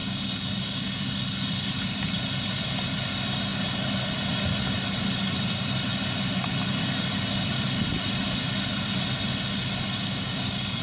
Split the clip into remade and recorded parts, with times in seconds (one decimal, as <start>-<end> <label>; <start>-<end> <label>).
0.0-1.0 remade; 1.0-10.0 recorded; 10.0-10.8 remade